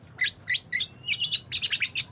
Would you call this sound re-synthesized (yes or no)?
no